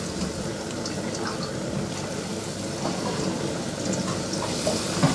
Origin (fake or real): real